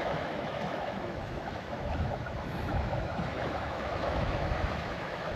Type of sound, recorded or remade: remade